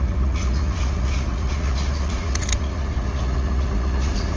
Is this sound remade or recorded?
remade